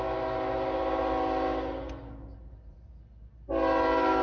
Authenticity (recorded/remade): recorded